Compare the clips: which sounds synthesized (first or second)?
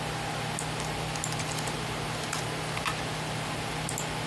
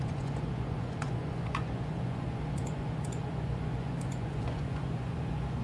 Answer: second